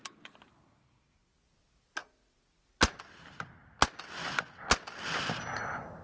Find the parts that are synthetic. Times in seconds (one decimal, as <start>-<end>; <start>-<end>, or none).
none